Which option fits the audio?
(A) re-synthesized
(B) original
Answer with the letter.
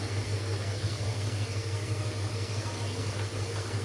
A